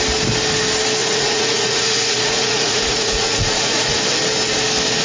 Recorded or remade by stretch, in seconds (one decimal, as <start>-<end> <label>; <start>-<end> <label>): 0.0-1.0 recorded; 1.0-4.0 remade; 4.0-5.0 recorded